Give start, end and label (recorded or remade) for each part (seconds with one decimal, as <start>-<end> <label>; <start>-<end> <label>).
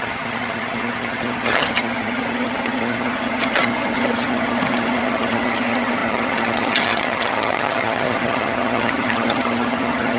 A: 0.0-10.2 remade